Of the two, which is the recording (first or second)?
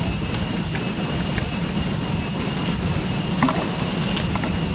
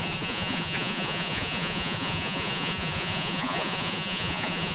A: first